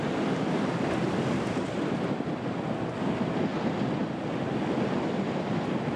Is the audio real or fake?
real